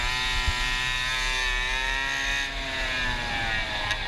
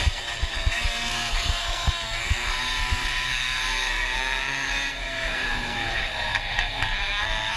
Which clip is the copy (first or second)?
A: second